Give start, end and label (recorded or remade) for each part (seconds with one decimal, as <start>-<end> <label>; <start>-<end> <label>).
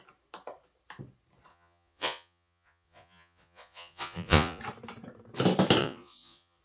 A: 0.0-1.5 recorded; 1.5-4.6 remade; 4.6-5.8 recorded; 5.8-6.6 remade